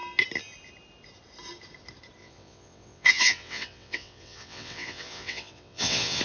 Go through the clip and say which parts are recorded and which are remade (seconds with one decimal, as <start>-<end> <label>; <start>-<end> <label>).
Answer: 0.0-2.2 recorded; 2.2-6.2 remade